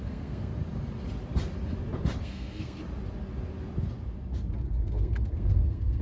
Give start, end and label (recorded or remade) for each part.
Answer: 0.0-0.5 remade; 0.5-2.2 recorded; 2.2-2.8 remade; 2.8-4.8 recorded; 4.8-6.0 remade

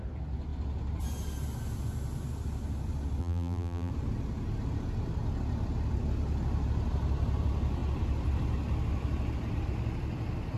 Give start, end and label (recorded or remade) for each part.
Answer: 0.0-3.2 recorded; 3.2-3.9 remade; 3.9-10.6 recorded